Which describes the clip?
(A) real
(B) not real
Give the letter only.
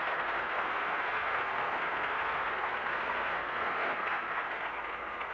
B